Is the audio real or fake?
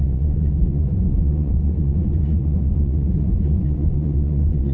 fake